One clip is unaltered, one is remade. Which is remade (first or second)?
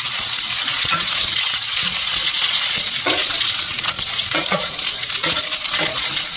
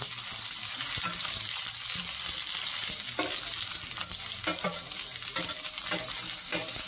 first